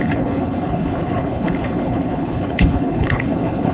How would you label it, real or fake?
fake